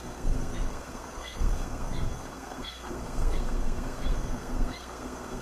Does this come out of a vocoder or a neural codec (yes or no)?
yes